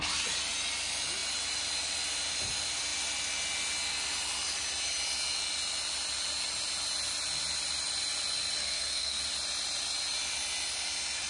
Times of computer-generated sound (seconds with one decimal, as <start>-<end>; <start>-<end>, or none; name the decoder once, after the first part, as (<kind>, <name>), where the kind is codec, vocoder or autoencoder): 8.6-9.2 (codec, SNAC)